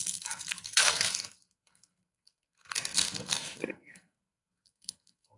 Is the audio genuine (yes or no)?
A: no